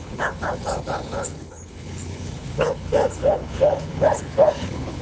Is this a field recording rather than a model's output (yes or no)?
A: no